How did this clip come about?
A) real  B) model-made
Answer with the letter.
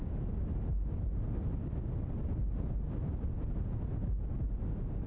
A